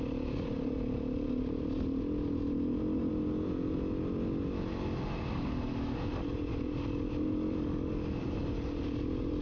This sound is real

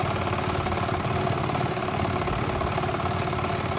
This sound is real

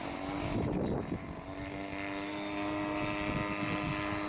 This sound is real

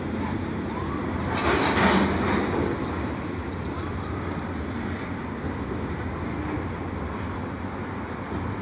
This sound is real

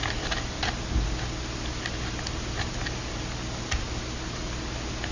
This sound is real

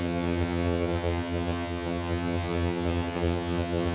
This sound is fake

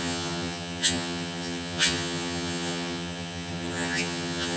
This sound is fake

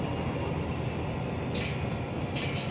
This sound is real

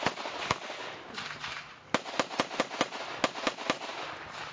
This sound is real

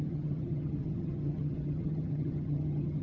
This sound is fake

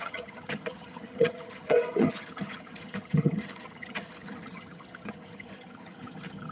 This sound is fake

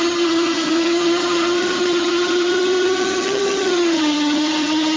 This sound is fake